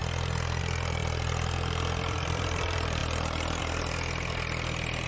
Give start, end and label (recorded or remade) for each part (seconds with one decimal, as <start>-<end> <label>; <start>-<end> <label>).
0.0-0.6 recorded; 0.6-1.0 remade; 1.0-2.0 recorded; 2.0-5.1 remade